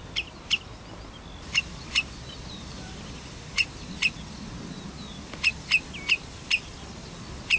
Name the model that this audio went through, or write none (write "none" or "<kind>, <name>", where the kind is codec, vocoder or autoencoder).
none